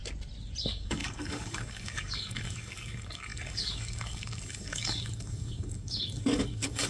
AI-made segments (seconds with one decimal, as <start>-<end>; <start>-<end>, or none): 0.6-6.9